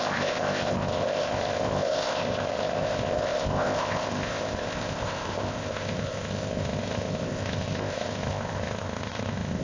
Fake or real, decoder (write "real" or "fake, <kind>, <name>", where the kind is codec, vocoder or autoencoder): fake, codec, ZipCodec